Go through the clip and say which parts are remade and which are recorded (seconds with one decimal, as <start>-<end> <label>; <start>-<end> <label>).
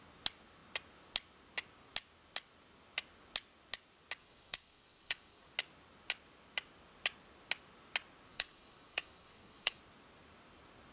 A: 0.0-4.2 recorded; 4.2-5.5 remade; 5.5-8.3 recorded; 8.3-9.8 remade; 9.8-10.9 recorded